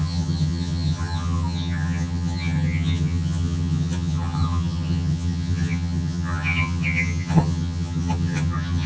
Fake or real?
fake